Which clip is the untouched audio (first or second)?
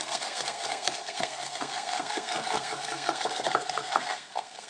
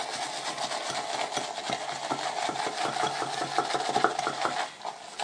second